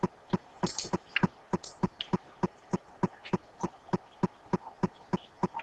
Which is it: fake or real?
real